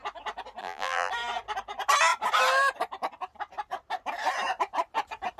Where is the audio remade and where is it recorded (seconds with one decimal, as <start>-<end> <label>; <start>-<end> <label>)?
0.0-0.6 recorded; 0.6-1.1 remade; 1.1-5.4 recorded